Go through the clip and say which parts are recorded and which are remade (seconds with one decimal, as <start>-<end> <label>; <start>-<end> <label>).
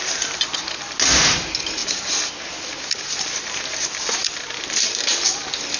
0.0-5.8 recorded